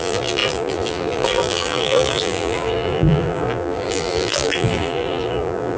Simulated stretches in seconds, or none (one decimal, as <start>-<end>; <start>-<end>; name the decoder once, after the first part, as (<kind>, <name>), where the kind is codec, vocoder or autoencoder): 0.0-5.8 (vocoder, BigVGAN v2)